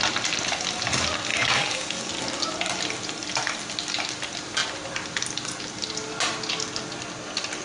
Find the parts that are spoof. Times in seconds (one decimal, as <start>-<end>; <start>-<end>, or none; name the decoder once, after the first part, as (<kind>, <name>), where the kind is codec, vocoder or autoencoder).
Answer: 1.3-2.1 (codec, DAC)